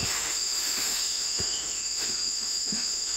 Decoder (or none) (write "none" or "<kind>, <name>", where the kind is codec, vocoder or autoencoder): autoencoder, DAC-VAE